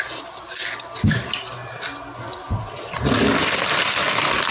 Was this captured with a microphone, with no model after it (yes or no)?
yes